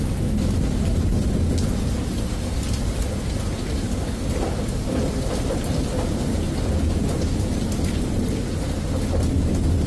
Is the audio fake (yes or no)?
no